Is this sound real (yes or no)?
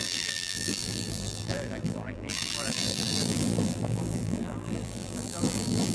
no